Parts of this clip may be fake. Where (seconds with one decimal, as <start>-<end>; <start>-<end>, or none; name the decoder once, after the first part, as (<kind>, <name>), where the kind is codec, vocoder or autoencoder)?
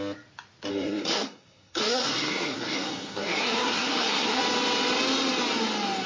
0.7-4.4 (codec, SNAC)